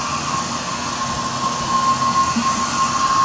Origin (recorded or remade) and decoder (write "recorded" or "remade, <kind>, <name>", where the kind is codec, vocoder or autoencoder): recorded